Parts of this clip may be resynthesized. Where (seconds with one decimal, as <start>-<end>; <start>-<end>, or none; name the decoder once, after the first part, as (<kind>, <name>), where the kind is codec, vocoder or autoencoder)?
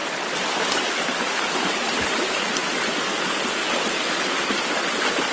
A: 0.0-2.1 (vocoder, BigVGAN v2)